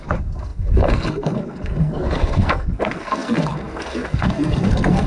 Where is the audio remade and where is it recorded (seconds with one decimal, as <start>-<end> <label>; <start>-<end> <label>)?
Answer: 0.0-5.1 remade